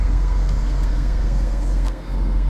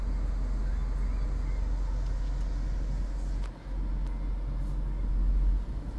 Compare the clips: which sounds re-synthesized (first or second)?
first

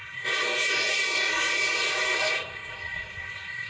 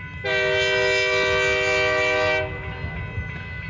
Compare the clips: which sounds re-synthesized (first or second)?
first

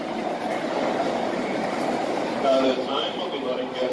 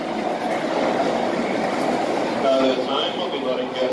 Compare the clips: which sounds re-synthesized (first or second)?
first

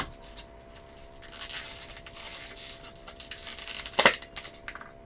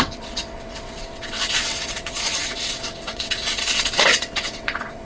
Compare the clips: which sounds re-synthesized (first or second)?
second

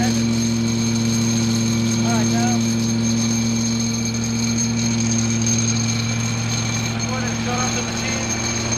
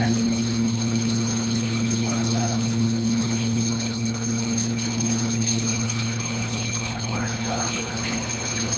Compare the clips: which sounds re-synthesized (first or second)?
second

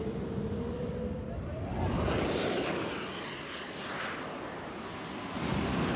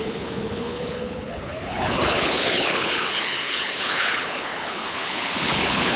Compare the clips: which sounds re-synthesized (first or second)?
second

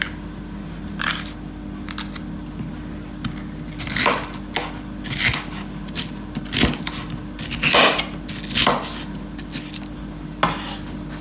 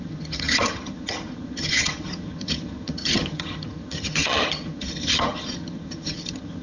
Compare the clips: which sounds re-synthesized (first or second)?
second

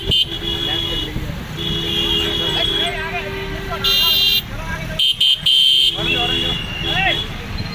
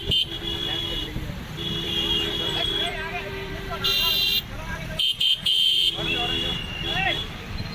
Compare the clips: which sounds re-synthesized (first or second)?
second